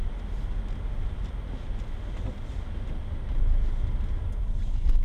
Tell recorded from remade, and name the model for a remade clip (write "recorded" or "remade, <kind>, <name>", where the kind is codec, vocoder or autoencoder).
recorded